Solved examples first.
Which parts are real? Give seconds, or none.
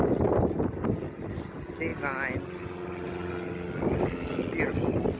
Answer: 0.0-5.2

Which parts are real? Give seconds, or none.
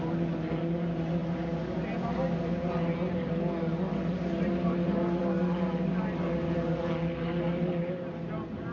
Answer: 0.0-8.7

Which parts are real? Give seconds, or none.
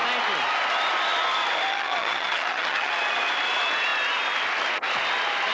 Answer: 0.0-1.7; 2.9-5.5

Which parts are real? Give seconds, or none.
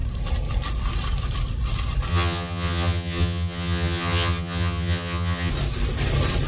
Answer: 0.0-2.1; 5.5-6.5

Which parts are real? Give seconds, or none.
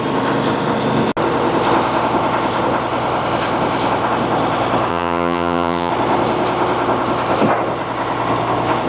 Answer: 0.0-4.9; 5.9-8.9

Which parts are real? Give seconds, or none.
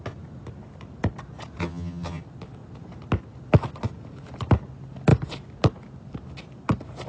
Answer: 0.0-1.6; 2.2-7.1